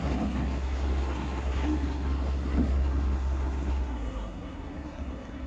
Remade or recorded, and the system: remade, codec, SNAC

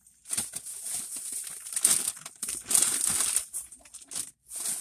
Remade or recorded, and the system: recorded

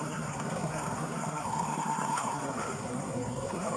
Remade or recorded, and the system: remade, codec, SNAC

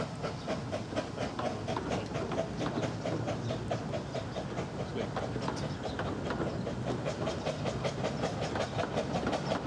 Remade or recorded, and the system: recorded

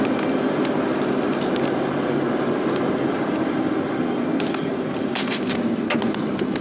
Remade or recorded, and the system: recorded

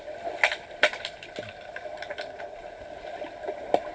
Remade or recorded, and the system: recorded